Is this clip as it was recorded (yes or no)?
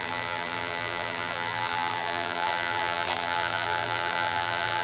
no